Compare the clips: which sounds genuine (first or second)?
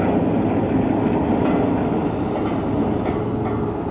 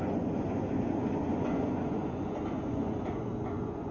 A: first